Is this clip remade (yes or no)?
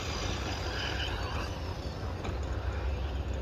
no